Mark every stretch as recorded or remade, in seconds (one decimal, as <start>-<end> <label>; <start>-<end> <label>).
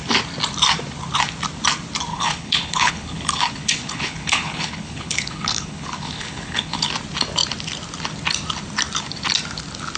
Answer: 0.0-2.1 recorded; 2.1-6.9 remade; 6.9-10.0 recorded